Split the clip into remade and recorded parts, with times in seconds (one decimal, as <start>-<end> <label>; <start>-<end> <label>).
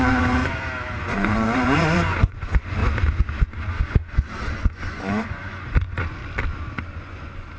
0.0-0.4 remade; 0.4-1.0 recorded; 1.0-2.8 remade; 2.8-4.6 recorded; 4.6-6.2 remade; 6.2-7.0 recorded; 7.0-7.6 remade